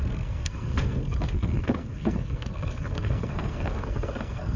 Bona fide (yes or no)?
no